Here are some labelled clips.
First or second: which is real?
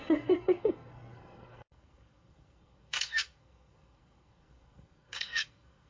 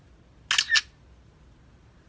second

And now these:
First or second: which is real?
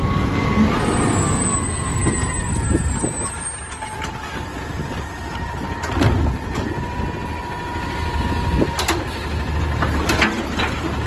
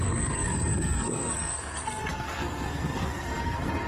first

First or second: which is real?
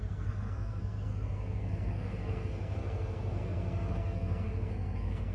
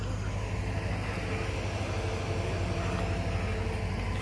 second